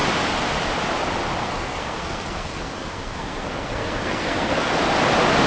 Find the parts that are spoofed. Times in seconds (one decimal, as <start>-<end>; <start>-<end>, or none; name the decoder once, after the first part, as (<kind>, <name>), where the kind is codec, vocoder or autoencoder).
1.4-4.7 (codec, SNAC)